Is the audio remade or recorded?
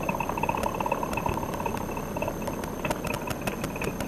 recorded